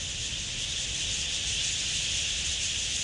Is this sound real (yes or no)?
yes